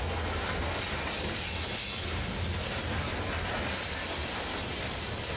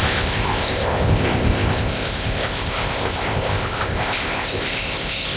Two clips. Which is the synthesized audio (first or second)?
second